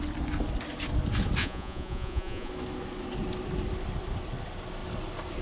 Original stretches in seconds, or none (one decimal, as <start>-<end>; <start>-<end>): 0.0-1.4; 2.5-5.4